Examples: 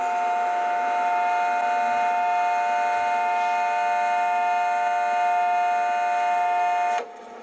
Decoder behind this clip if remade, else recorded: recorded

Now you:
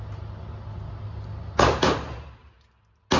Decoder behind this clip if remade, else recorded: recorded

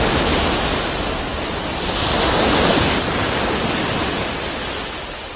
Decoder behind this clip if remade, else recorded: recorded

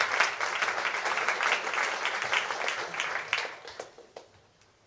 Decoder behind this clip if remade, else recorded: recorded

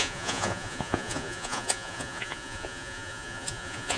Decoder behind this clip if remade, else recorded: remade, vocoder, Vocos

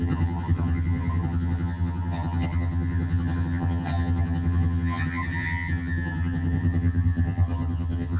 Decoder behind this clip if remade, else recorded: remade, vocoder, HiFi-GAN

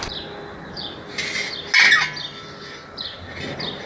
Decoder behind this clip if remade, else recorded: recorded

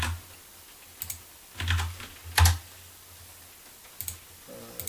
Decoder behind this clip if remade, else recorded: recorded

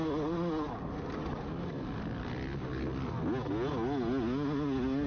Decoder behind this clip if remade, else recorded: recorded